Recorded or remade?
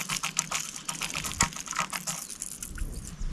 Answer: recorded